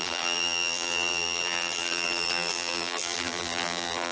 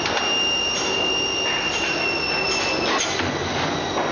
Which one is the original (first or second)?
second